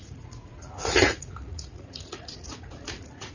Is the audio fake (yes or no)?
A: yes